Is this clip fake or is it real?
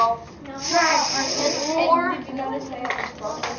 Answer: real